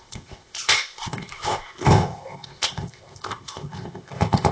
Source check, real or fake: fake